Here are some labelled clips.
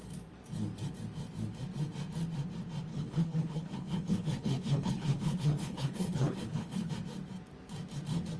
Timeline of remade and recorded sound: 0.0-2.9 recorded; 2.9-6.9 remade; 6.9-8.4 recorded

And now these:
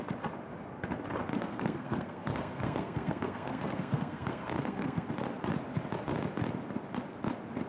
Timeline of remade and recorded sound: 0.0-1.3 recorded; 1.3-5.1 remade; 5.1-7.7 recorded